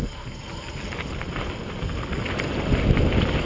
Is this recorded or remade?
recorded